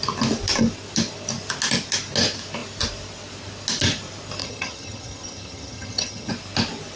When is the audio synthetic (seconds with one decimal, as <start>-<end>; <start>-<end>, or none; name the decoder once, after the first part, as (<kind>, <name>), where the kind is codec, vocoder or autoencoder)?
4.4-6.3 (vocoder, HiFi-GAN)